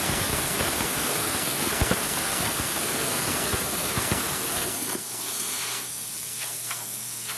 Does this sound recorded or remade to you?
remade